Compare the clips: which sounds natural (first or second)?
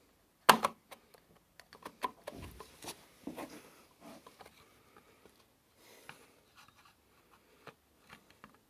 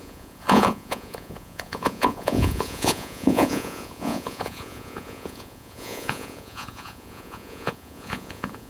first